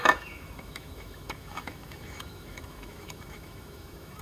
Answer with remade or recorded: remade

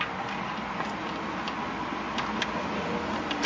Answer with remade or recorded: recorded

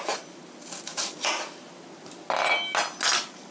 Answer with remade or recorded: recorded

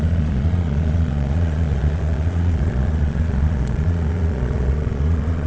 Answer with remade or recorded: remade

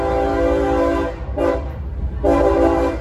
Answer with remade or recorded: recorded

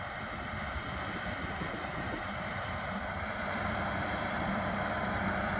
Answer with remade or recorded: remade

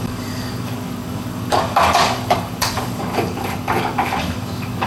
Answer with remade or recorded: remade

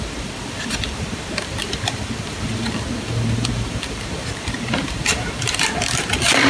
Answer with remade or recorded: remade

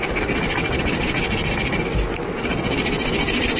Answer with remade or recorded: recorded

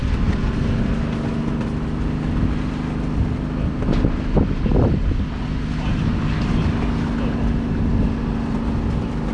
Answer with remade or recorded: recorded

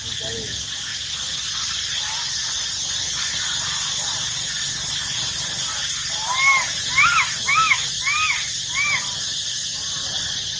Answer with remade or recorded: recorded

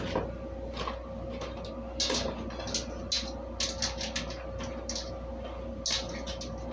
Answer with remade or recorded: recorded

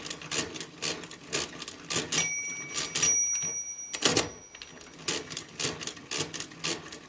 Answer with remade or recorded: recorded